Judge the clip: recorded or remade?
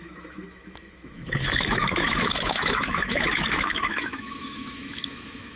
remade